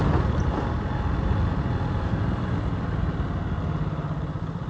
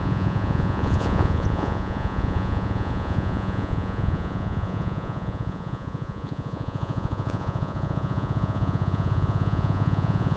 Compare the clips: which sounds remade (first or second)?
second